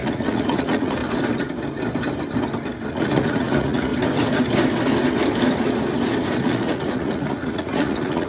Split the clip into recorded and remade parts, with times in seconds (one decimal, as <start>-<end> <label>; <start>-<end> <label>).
0.0-1.0 remade; 1.0-2.9 recorded; 2.9-3.9 remade; 3.9-6.4 recorded; 6.4-8.3 remade